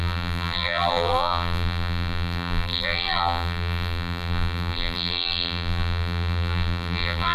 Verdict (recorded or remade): remade